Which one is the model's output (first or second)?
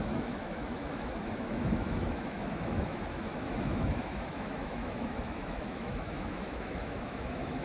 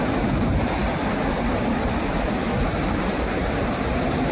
first